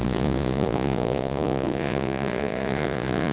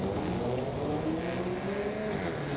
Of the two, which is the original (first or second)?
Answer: second